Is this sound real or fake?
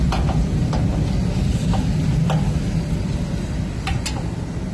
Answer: real